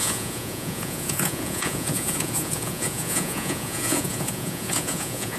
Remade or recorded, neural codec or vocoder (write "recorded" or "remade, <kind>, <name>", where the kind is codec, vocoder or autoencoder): remade, vocoder, Vocos